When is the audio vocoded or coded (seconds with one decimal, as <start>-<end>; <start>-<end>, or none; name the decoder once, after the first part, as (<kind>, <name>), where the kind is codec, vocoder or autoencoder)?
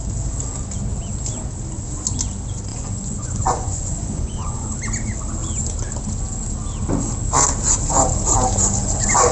2.7-4.7 (vocoder, Vocos)